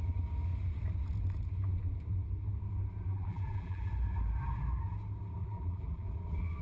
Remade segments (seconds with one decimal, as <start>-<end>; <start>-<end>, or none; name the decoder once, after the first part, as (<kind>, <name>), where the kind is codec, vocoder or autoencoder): 3.1-3.9 (vocoder, BigVGAN v2); 5.4-6.1

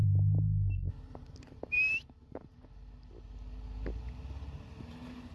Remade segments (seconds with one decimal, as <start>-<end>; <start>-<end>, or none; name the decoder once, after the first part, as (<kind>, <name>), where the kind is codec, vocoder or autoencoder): none

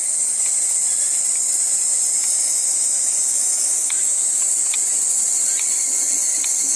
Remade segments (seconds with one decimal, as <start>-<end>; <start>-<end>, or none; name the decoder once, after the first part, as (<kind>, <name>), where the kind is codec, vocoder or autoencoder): 2.2-4.4 (autoencoder, DAC-VAE)

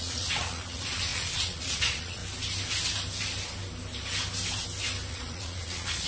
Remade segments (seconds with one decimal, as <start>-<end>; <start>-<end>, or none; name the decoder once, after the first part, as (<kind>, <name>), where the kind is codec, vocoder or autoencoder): 0.0-2.2 (vocoder, Vocos); 5.1-6.1

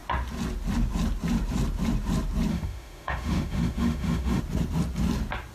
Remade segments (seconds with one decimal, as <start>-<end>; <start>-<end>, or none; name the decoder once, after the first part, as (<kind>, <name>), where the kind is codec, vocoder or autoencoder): 2.5-4.4 (autoencoder, DAC-VAE)